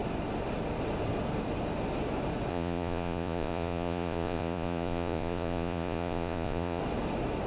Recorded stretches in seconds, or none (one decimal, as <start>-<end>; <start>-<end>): 0.0-2.5; 6.8-7.5